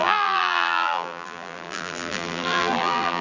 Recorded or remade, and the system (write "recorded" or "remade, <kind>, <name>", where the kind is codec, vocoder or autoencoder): remade, vocoder, BigVGAN v2